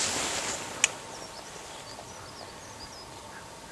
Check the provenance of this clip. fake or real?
real